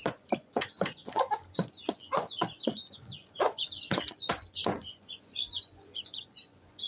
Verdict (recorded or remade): remade